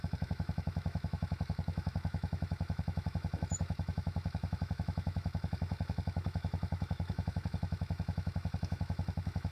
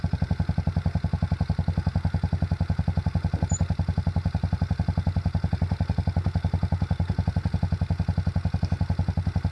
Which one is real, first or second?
second